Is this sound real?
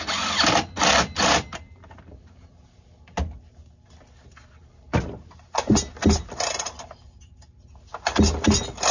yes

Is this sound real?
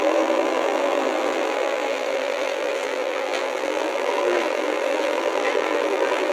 no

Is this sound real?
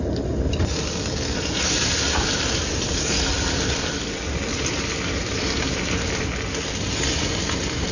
yes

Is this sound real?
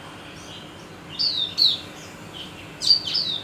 yes